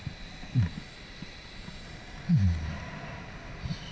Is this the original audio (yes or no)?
yes